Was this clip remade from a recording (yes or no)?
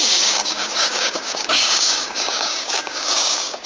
yes